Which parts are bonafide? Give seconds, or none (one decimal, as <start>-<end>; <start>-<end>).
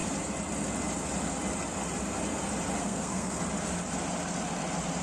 0.0-2.8; 3.4-5.0